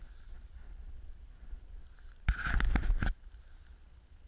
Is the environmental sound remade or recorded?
recorded